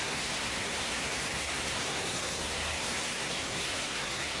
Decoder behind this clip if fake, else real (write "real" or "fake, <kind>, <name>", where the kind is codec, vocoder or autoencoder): fake, codec, SNAC